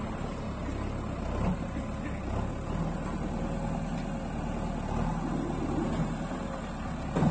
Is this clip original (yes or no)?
yes